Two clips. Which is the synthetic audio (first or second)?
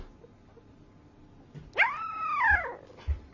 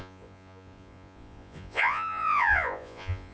second